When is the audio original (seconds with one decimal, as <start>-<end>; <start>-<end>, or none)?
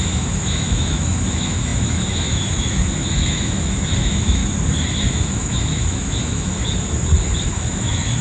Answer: 4.4-5.1; 6.5-7.5